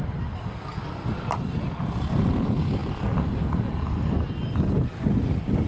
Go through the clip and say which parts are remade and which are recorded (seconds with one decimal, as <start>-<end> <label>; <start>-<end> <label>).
0.0-5.7 recorded